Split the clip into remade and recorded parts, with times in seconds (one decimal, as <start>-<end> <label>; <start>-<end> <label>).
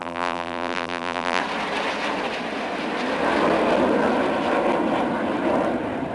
0.0-1.4 remade; 1.4-6.1 recorded